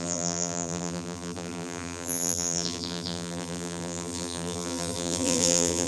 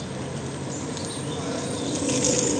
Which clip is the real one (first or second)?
second